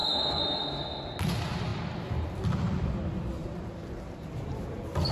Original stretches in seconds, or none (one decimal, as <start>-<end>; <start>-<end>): 1.0-5.1